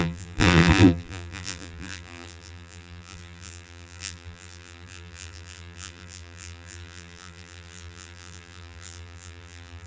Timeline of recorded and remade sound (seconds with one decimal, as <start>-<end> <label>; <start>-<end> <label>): 0.0-9.9 remade